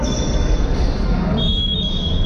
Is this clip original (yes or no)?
no